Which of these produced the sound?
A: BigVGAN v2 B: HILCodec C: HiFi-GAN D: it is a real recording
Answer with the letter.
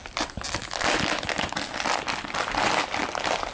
D